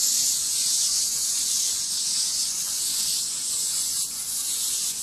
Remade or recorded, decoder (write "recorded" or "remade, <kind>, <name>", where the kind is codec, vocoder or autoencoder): remade, vocoder, Vocos